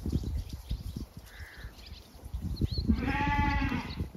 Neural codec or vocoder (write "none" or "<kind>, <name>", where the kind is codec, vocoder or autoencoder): none